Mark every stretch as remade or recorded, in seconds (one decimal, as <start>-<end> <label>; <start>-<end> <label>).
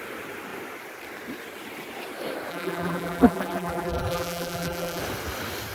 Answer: 0.0-2.5 recorded; 2.5-5.0 remade; 5.0-5.7 recorded